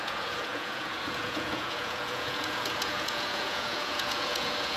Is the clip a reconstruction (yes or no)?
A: yes